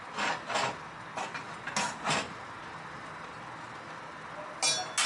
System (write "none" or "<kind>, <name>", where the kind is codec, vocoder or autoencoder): none